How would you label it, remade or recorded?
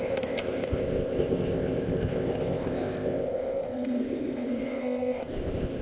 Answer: remade